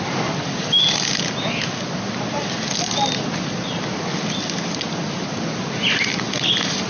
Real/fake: real